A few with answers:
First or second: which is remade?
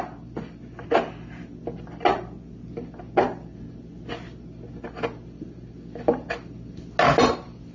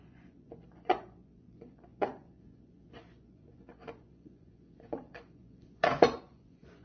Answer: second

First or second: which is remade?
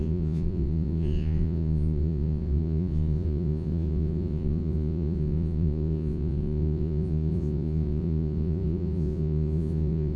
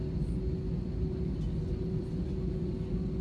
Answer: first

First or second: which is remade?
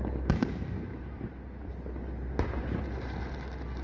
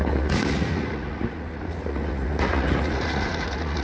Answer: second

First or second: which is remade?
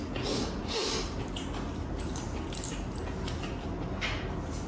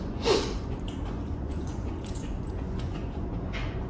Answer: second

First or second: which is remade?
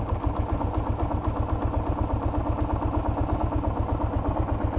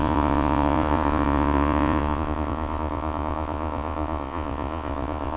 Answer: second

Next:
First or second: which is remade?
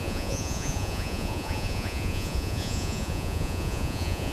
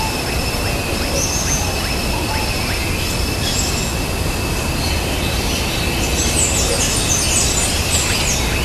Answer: first